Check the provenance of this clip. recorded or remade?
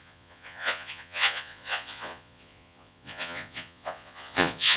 remade